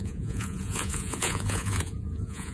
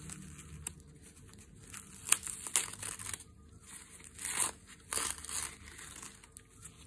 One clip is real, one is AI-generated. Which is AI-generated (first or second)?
first